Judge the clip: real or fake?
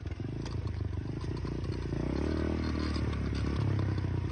real